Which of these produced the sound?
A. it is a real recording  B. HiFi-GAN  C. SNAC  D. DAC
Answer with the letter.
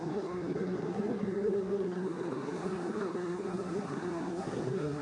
C